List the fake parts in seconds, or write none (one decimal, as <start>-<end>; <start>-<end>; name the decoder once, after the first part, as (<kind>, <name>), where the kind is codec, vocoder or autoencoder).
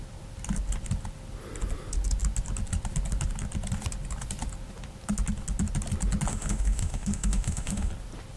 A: 6.3-7.9 (autoencoder, DAC-VAE)